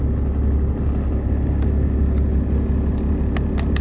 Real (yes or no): yes